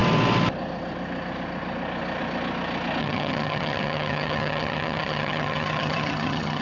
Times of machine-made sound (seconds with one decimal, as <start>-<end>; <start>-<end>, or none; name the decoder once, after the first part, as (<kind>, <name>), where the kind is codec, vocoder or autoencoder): 3.0-6.6 (vocoder, HiFi-GAN)